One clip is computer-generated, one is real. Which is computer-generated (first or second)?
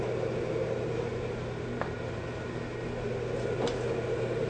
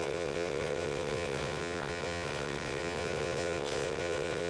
second